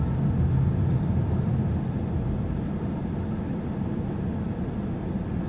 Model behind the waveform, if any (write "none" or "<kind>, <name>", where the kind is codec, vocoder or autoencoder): none